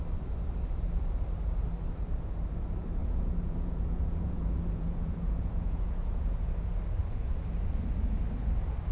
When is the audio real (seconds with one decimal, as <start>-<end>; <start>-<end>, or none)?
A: 0.0-3.0; 6.5-8.9